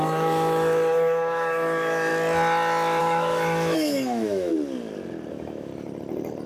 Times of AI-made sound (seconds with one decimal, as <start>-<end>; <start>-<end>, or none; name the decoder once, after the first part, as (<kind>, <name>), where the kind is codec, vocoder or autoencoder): 0.0-2.1 (autoencoder, DAC-VAE); 3.0-4.5; 5.3-5.7